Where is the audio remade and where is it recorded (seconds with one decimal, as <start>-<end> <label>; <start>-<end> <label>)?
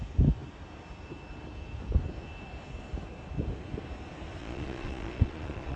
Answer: 0.0-4.4 recorded; 4.4-5.8 remade